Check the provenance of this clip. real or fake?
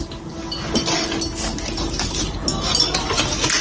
real